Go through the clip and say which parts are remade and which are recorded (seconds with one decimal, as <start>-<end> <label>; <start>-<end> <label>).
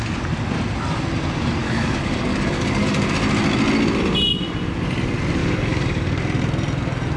0.0-1.6 recorded; 1.6-3.1 remade; 3.1-5.4 recorded; 5.4-6.2 remade; 6.2-7.2 recorded